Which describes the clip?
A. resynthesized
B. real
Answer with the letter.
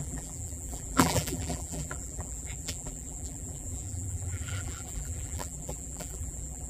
A